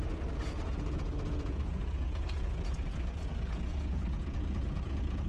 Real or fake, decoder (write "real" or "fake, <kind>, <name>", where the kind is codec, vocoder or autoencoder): fake, vocoder, Vocos